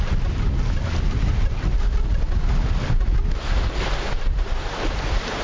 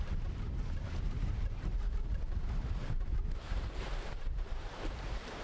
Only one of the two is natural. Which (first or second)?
first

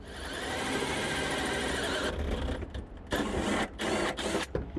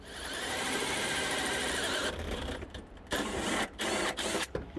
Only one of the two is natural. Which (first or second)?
first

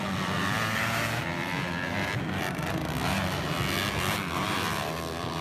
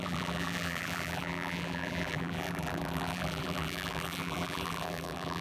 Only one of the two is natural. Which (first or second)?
first